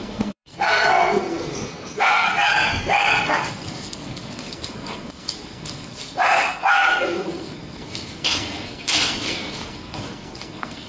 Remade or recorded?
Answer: remade